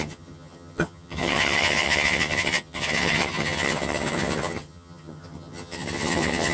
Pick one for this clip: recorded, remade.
remade